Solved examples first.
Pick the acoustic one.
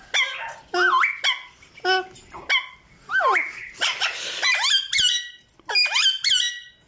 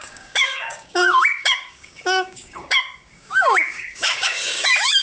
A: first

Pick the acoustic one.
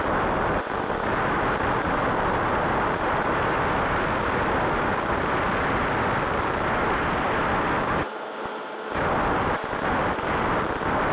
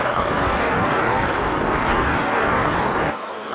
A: first